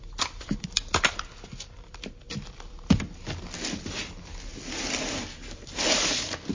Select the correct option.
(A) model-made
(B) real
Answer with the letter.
B